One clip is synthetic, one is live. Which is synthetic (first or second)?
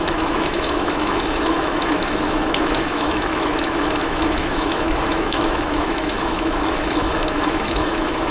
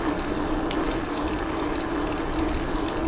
first